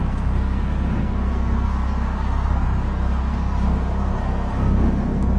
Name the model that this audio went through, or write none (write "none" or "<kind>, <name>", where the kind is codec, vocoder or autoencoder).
codec, SNAC